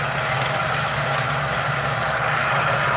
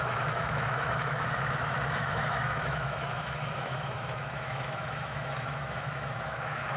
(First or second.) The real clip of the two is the first